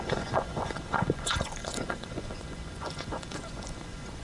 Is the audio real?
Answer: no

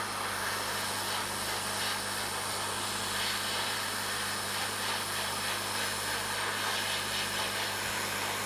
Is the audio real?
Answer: yes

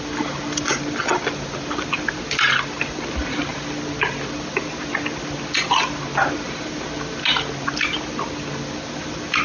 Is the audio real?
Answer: yes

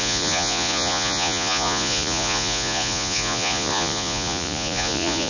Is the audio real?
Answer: no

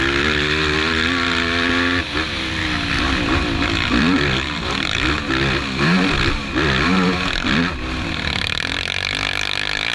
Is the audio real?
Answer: yes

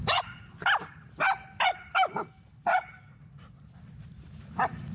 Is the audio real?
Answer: yes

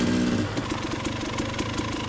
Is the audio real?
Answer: yes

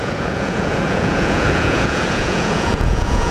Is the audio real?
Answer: no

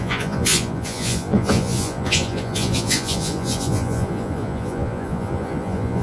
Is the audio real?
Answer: no